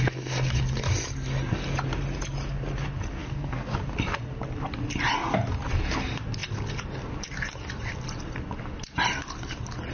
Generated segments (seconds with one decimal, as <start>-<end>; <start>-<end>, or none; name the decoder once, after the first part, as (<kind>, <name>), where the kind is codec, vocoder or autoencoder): 3.2-3.8 (codec, SNAC)